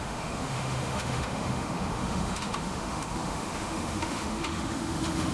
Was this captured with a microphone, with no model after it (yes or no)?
no